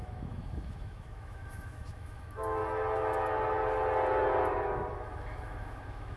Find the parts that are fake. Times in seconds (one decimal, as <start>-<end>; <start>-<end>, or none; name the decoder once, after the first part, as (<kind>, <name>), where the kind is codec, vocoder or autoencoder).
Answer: 0.0-2.6 (autoencoder, DAC-VAE); 5.2-6.2